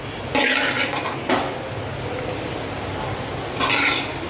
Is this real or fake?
real